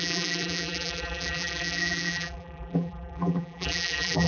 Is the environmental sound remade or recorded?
remade